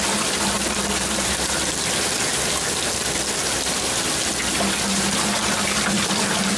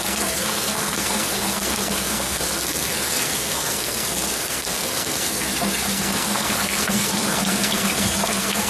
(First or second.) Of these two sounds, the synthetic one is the second